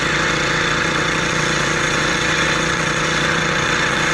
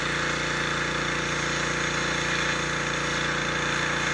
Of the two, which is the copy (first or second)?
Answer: first